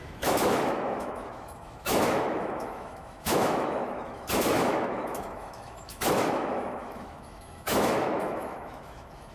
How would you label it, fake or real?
fake